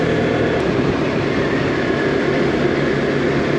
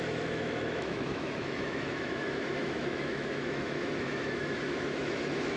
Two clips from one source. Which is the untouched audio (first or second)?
first